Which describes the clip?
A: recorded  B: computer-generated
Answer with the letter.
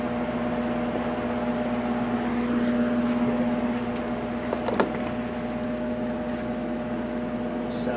A